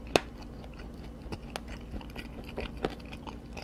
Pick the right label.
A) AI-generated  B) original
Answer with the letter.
B